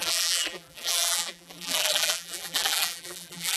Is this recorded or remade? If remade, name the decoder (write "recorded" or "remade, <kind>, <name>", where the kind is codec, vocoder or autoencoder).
remade, vocoder, BigVGAN v2